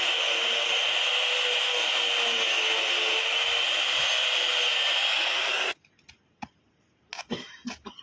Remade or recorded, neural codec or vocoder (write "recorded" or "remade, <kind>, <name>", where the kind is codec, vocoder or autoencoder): recorded